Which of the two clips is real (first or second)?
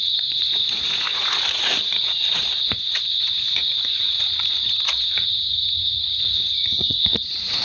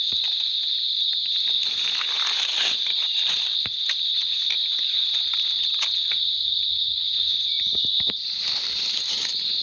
second